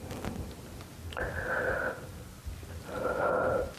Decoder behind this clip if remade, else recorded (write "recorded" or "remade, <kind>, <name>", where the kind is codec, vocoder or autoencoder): recorded